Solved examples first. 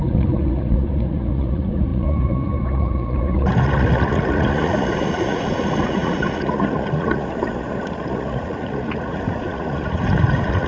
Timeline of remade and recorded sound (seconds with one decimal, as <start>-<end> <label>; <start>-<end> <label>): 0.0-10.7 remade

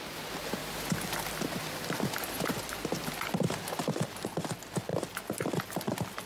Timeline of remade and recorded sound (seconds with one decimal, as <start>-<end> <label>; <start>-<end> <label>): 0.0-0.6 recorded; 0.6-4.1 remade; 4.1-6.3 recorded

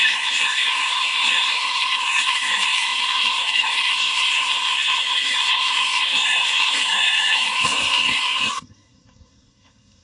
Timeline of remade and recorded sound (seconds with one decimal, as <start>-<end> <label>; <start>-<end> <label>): 0.0-10.0 remade

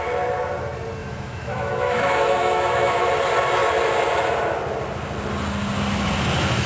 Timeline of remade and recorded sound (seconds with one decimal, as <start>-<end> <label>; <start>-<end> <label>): 0.0-1.0 recorded; 1.0-3.1 remade; 3.1-6.7 recorded

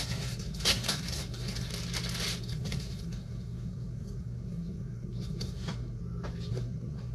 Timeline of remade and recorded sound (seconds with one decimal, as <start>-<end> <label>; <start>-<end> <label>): 0.0-1.7 remade; 1.7-2.4 recorded; 2.4-6.0 remade; 6.0-6.5 recorded; 6.5-7.1 remade

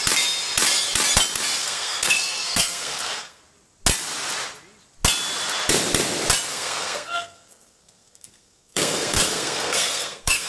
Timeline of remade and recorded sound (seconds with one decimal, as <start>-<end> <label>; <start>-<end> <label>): 0.0-1.6 recorded; 1.6-3.4 remade; 3.4-6.5 recorded; 6.5-10.5 remade